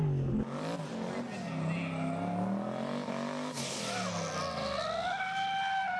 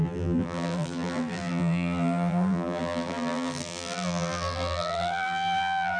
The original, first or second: first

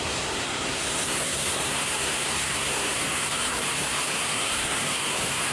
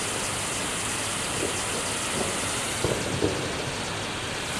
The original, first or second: second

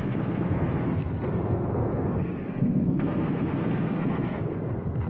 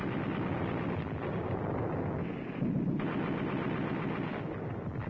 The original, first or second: second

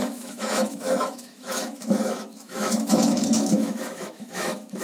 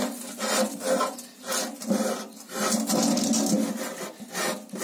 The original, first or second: second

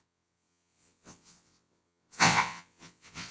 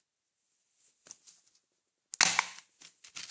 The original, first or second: second